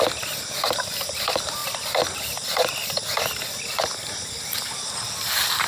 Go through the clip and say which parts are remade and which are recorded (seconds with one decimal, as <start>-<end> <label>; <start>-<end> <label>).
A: 0.0-5.7 recorded